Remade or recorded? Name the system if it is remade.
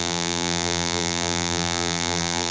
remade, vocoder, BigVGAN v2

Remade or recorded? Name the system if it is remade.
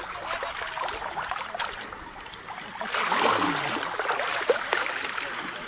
recorded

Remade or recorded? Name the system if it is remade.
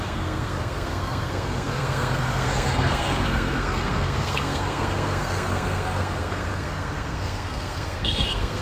remade, codec, SNAC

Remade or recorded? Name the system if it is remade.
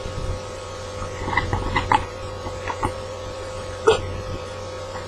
remade, vocoder, Vocos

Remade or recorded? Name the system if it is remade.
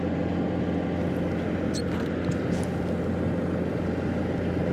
recorded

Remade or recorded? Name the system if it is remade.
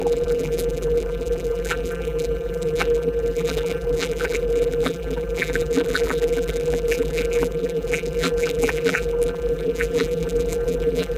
remade, vocoder, BigVGAN v2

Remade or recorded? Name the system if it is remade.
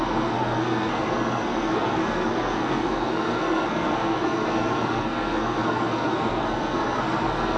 remade, codec, SNAC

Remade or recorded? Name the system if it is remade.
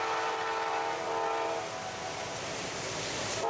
recorded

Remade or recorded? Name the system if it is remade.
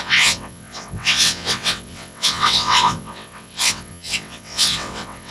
remade, vocoder, WaveNeXt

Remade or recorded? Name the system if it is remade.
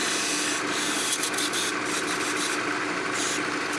recorded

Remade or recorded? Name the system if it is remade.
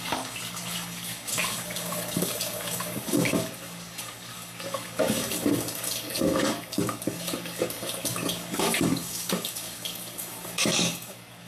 remade, codec, DAC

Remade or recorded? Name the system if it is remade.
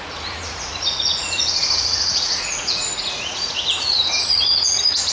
remade, vocoder, Vocos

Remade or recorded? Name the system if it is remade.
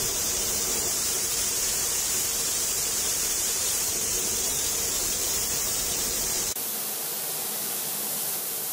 remade, vocoder, BigVGAN v2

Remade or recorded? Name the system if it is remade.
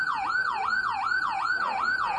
remade, vocoder, Vocos